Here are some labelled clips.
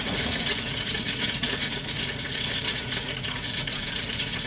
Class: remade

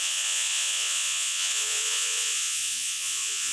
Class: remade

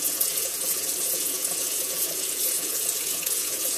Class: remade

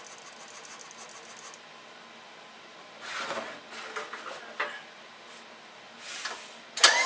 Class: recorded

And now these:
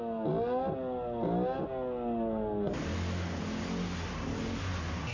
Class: recorded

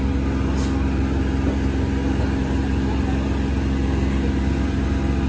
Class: recorded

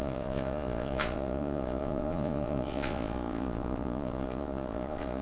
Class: remade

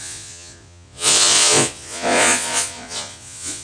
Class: remade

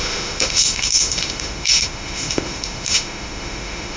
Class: remade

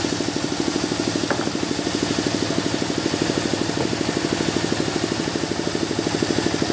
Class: recorded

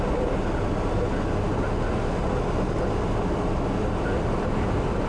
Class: recorded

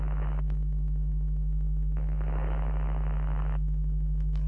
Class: remade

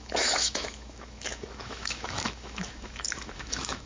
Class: remade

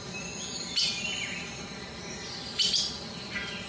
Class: recorded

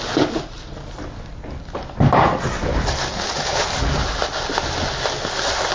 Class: recorded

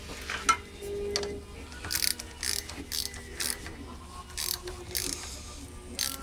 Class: recorded